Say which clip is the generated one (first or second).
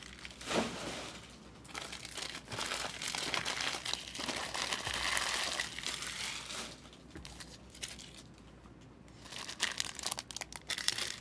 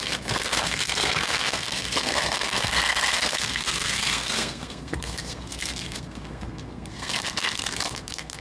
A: second